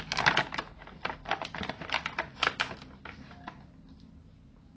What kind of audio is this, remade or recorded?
recorded